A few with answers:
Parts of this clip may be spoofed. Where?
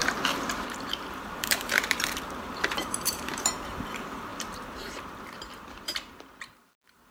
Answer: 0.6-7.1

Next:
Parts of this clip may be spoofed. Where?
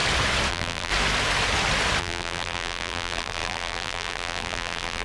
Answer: 0.5-0.9; 2.0-5.0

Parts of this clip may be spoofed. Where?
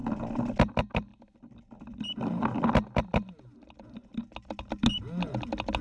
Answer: none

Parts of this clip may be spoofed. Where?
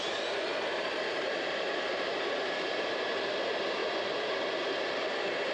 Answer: 0.5-3.2; 3.8-4.4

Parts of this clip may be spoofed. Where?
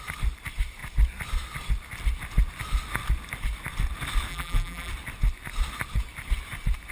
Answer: 4.3-4.9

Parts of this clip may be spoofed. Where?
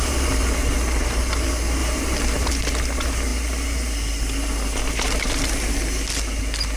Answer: 1.8-2.5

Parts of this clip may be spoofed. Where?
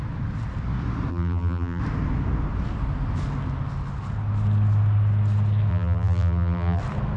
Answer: 1.1-1.8; 5.7-6.8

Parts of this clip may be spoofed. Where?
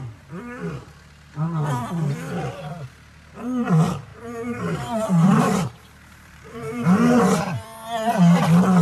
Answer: 4.1-7.4